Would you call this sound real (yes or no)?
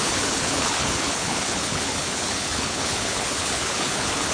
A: no